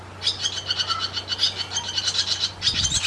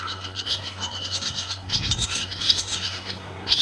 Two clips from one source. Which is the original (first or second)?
first